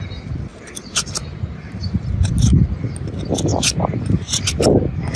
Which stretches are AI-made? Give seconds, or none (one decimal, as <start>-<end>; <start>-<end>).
0.5-2.3; 3.5-4.6